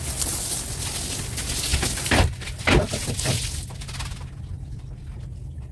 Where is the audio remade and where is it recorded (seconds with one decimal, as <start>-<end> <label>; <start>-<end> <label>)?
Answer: 0.0-5.7 recorded